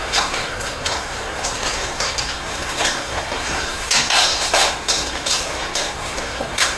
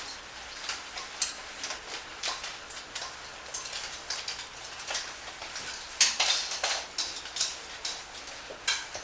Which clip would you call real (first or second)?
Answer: second